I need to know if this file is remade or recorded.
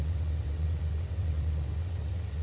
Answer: remade